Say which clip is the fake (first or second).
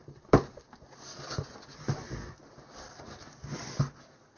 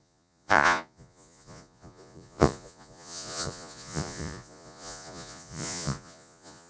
second